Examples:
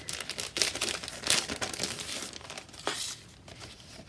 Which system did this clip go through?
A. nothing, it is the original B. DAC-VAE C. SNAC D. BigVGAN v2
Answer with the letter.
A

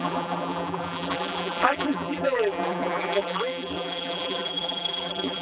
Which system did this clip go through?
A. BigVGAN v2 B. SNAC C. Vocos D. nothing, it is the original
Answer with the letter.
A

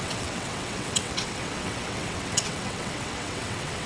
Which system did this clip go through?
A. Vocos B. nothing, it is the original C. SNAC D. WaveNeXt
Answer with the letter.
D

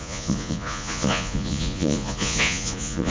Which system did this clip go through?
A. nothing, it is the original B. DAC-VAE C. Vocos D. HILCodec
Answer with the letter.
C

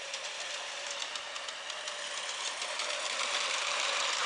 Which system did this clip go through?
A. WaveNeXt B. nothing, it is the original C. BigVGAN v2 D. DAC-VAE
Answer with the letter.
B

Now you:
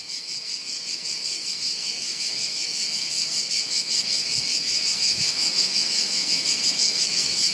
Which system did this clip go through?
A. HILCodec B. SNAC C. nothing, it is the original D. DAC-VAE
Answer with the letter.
B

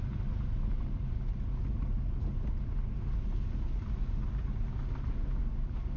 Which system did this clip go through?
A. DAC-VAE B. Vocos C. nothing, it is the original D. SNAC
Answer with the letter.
C